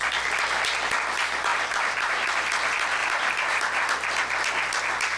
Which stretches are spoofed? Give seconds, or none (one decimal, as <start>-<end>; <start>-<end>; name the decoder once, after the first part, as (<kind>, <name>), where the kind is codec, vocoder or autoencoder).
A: 1.5-2.3 (vocoder, BigVGAN v2); 3.0-3.6